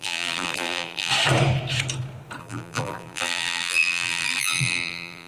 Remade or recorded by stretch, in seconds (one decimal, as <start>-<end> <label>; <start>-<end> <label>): 0.0-1.1 remade; 1.1-2.4 recorded; 2.4-5.3 remade